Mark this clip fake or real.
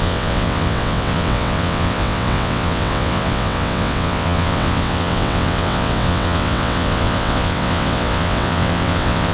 fake